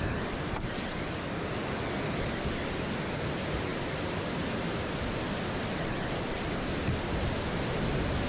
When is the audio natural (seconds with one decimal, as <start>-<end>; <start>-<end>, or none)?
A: 0.0-0.9; 1.6-8.3